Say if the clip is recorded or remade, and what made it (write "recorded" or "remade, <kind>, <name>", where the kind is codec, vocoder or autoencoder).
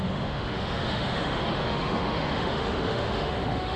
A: remade, autoencoder, DAC-VAE